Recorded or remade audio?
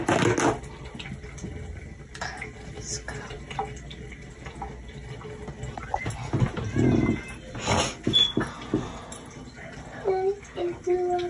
recorded